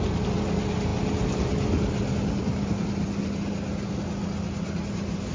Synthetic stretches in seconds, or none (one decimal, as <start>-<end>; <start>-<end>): none